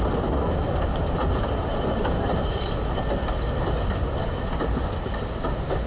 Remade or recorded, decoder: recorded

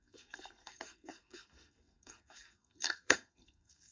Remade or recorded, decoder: remade, codec, SNAC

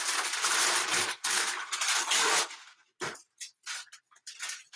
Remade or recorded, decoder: recorded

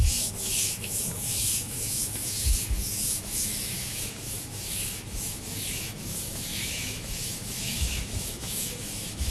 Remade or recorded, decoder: remade, autoencoder, DAC-VAE